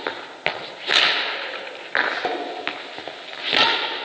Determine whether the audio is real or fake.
real